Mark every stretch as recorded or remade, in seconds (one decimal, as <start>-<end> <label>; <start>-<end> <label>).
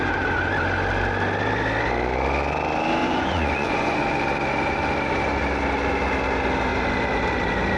0.0-3.0 recorded; 3.0-4.0 remade; 4.0-7.8 recorded